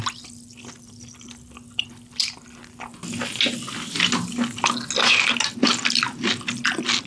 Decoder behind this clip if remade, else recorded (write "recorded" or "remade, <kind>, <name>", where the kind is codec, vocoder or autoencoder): recorded